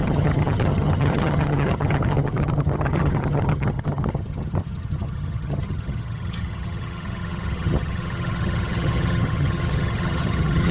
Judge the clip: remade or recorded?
remade